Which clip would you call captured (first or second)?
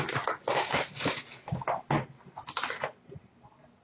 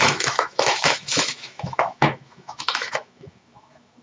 first